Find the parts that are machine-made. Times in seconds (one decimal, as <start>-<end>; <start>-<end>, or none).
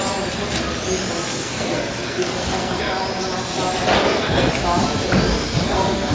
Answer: 1.3-2.8; 4.0-4.5; 5.4-6.1